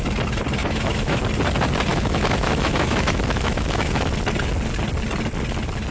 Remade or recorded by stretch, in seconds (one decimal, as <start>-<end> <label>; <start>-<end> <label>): 0.0-0.6 recorded; 0.6-1.2 remade; 1.2-1.9 recorded; 1.9-4.0 remade; 4.0-5.9 recorded